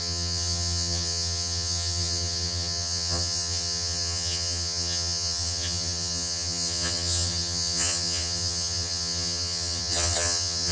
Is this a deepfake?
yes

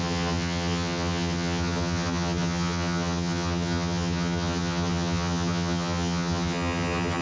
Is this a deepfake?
yes